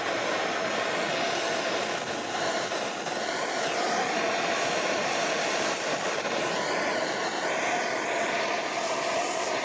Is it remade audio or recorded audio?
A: recorded